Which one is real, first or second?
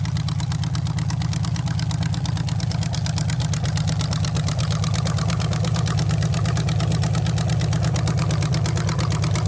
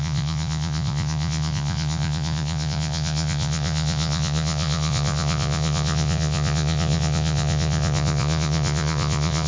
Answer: first